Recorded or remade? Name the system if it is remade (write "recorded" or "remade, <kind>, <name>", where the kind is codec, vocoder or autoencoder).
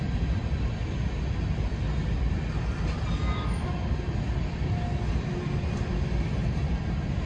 recorded